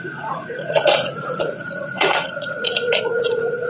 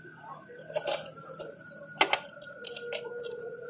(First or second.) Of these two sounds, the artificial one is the first